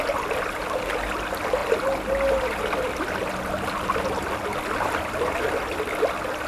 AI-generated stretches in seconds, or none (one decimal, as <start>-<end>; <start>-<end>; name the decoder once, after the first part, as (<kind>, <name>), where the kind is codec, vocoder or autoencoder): none